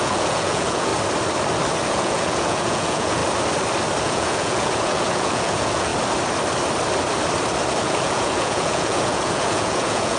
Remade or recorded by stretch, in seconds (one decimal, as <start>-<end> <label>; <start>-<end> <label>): 0.0-0.9 remade; 0.9-1.9 recorded; 1.9-3.2 remade; 3.2-4.0 recorded; 4.0-5.9 remade; 5.9-7.8 recorded; 7.8-10.2 remade